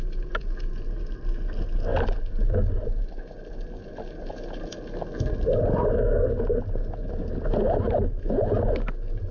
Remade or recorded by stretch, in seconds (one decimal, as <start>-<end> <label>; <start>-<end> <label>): 0.0-9.3 recorded